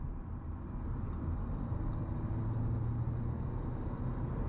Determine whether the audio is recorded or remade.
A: recorded